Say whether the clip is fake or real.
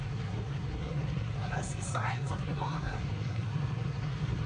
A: fake